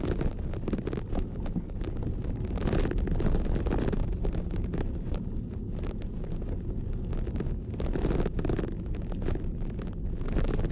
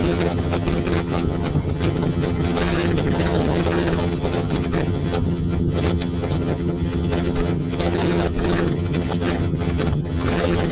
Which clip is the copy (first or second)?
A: second